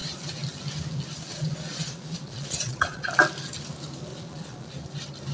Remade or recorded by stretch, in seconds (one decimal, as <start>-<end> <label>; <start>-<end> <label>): 0.0-1.3 recorded; 1.3-3.1 remade; 3.1-4.1 recorded; 4.1-4.7 remade; 4.7-5.3 recorded